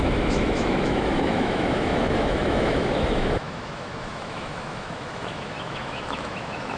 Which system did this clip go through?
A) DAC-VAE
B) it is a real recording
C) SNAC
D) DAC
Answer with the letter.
A